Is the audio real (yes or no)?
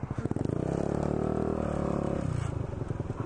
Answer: yes